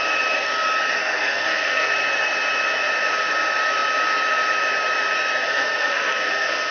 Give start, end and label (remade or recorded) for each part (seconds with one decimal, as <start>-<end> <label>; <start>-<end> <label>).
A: 0.0-1.0 recorded; 1.0-1.9 remade; 1.9-5.4 recorded; 5.4-6.7 remade